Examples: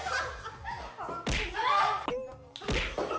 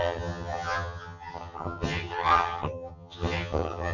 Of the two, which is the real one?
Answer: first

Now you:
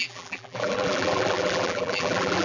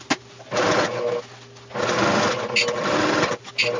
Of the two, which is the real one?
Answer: second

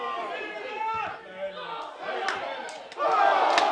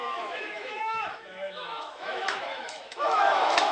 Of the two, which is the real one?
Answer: first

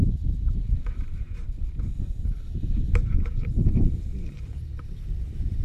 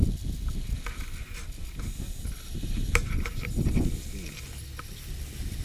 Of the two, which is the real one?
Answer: second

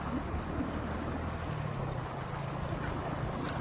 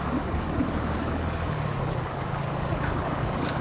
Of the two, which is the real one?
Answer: first